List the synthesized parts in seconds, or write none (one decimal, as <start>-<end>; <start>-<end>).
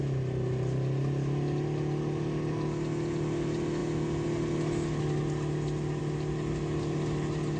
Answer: none